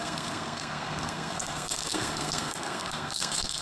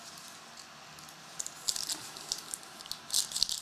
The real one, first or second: second